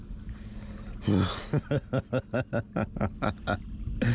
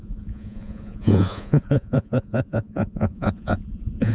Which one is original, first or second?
first